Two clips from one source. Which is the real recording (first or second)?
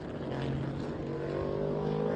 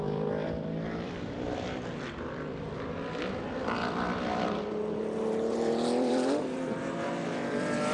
first